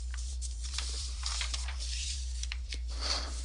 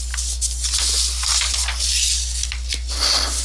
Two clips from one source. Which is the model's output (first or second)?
first